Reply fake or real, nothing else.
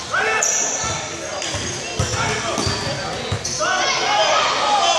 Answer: real